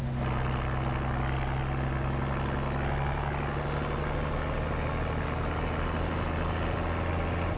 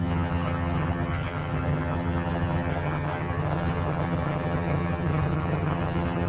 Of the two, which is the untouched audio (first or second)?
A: first